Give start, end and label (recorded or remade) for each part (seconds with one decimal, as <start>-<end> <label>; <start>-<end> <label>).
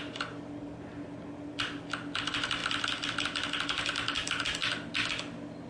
0.0-5.7 recorded